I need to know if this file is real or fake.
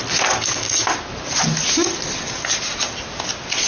real